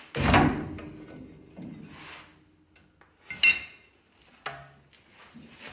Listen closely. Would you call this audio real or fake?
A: real